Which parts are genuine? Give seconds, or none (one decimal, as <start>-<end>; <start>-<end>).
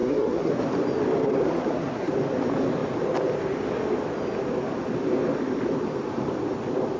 0.5-1.4; 2.1-7.0